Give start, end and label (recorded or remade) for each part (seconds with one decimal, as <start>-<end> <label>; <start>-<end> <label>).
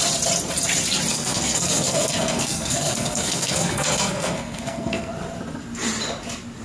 0.0-1.1 recorded; 1.1-5.1 remade; 5.1-6.6 recorded